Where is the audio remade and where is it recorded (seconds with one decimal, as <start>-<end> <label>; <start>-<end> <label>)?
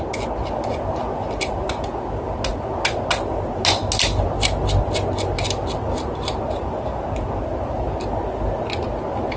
0.0-9.4 recorded